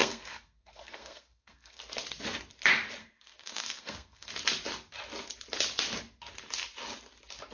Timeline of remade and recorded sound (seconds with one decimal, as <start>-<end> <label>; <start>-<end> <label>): 0.0-1.8 remade; 1.8-3.0 recorded; 3.0-4.3 remade; 4.3-7.5 recorded